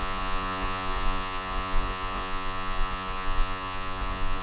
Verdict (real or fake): fake